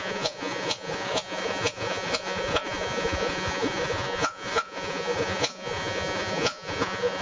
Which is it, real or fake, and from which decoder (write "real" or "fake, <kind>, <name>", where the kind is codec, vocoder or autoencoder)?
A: fake, vocoder, Vocos